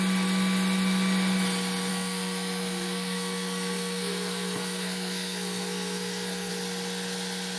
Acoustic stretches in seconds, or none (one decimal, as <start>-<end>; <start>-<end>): 0.0-1.9; 6.5-7.6